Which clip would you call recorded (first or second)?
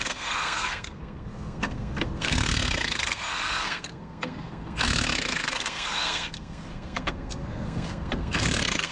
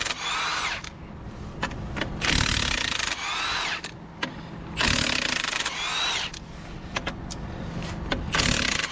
second